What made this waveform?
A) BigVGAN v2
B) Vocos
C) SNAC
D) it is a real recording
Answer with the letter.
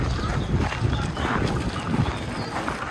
D